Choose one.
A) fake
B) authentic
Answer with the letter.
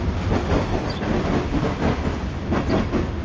B